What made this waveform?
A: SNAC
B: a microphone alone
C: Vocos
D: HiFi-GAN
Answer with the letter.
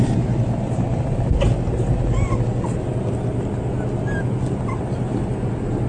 B